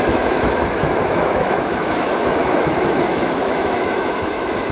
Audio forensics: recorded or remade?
remade